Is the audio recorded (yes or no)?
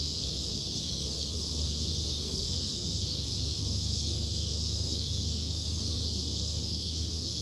no